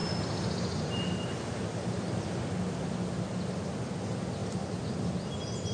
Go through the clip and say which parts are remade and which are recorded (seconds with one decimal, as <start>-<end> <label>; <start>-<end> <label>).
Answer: 0.0-4.4 recorded; 4.4-5.0 remade; 5.0-5.7 recorded